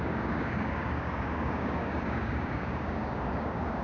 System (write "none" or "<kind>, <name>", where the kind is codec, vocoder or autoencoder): codec, DAC